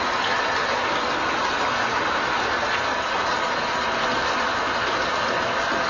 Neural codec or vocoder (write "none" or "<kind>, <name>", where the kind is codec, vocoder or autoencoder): none